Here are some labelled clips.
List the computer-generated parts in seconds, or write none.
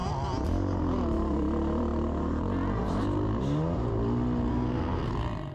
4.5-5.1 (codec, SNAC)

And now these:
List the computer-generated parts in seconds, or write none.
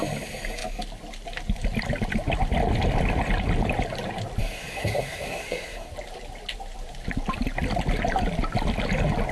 4.4-5.9 (codec, SNAC)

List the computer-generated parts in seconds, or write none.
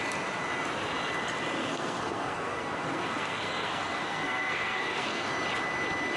1.6-5.3 (codec, SNAC)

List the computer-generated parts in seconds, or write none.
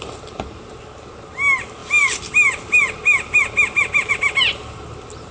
none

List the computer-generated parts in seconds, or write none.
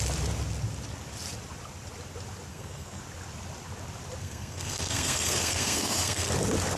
2.5-3.0 (codec, SNAC); 4.2-6.3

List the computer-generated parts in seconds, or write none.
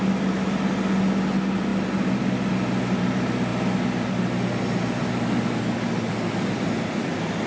none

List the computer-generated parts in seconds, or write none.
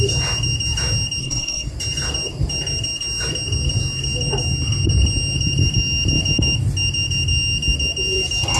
1.2-1.7 (codec, SNAC)